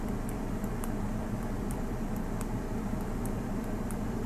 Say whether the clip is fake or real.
fake